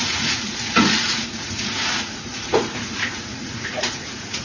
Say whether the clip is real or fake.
fake